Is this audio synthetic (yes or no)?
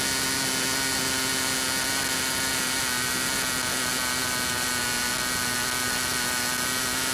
no